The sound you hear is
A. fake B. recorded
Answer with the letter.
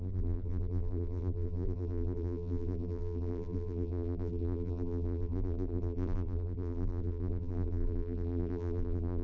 A